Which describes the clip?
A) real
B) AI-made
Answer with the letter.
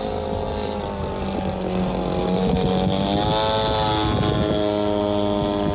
A